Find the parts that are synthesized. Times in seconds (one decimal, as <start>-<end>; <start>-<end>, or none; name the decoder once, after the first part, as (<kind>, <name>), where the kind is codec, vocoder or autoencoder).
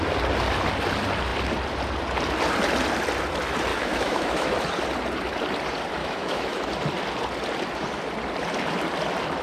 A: 3.7-4.5 (autoencoder, DAC-VAE); 6.0-6.6